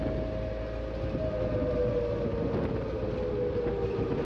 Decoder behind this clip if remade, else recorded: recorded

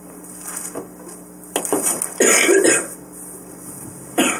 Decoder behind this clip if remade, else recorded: recorded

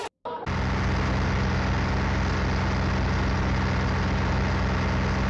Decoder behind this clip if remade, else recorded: recorded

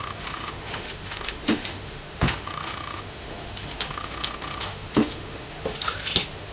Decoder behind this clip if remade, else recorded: remade, autoencoder, DAC-VAE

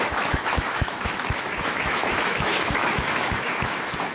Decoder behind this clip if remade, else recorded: remade, autoencoder, DAC-VAE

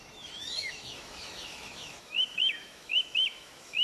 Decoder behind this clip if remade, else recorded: remade, autoencoder, DAC-VAE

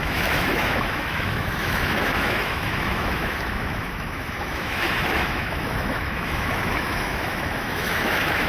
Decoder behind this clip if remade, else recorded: remade, autoencoder, DAC-VAE